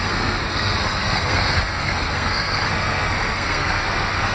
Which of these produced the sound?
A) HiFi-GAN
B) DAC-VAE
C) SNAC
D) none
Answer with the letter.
C